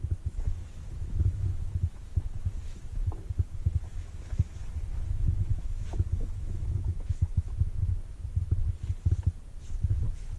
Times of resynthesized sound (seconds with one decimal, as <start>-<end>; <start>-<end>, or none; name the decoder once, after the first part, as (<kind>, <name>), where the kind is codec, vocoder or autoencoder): 0.0-4.6 (autoencoder, DAC-VAE); 5.1-8.6; 9.9-10.4